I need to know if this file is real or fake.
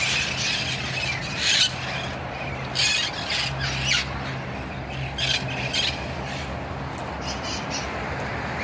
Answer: real